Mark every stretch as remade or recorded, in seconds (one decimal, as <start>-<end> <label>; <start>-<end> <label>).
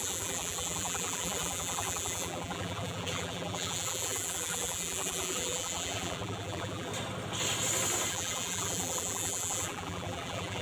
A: 0.0-6.9 remade; 6.9-8.1 recorded; 8.1-10.6 remade